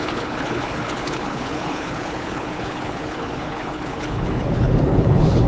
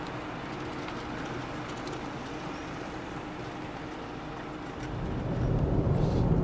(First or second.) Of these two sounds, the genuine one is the second